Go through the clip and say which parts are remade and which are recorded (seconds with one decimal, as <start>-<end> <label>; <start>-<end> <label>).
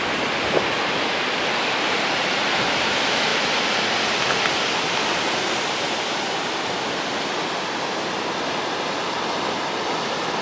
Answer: 0.0-10.4 recorded